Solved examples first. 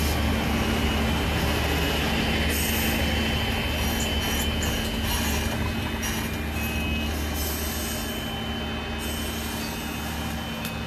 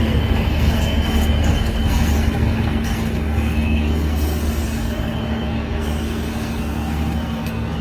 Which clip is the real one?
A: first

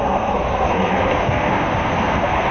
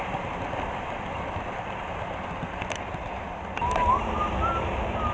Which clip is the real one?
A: second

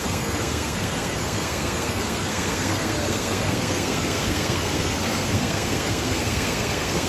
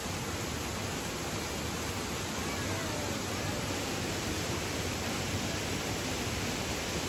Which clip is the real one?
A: second